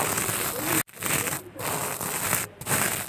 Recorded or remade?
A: recorded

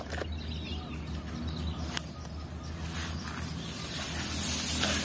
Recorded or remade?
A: recorded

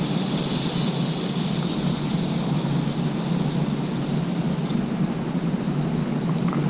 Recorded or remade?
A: recorded